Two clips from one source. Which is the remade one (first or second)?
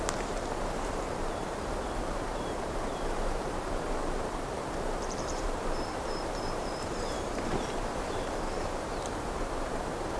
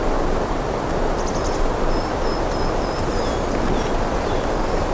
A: first